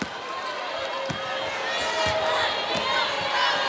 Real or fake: real